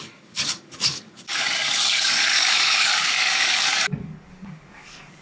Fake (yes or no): yes